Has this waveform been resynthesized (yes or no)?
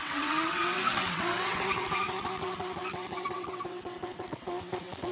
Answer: yes